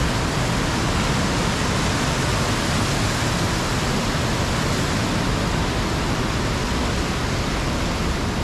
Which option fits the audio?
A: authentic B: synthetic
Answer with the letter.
A